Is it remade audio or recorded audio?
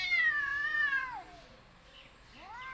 recorded